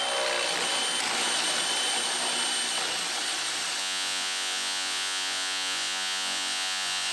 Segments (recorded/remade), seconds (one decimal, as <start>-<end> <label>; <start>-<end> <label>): 0.0-3.8 recorded; 3.8-7.1 remade